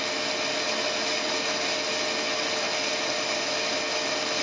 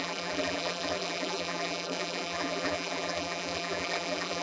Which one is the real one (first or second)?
first